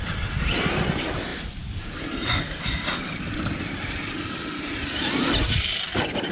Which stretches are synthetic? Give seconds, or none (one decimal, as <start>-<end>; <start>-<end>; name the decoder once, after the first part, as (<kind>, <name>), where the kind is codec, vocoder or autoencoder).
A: none